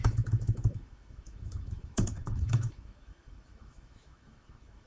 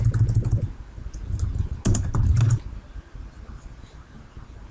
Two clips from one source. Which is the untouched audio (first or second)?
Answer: second